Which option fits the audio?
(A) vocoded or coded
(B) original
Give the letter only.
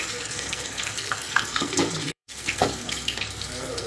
A